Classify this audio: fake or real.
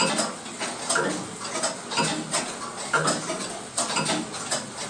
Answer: real